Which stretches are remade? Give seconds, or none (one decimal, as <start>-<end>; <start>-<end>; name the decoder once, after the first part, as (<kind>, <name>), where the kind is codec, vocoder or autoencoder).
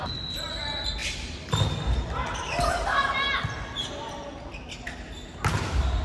1.0-4.6 (vocoder, BigVGAN v2)